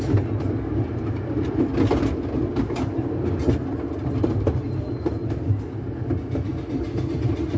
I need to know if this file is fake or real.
real